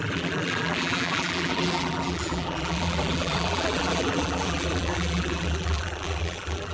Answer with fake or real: fake